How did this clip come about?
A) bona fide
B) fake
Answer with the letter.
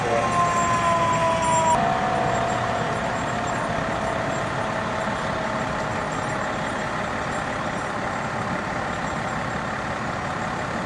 A